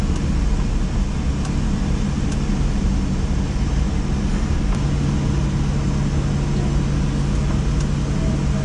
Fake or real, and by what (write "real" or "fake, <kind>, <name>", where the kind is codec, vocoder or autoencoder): real